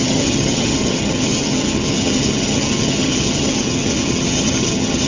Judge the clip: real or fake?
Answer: fake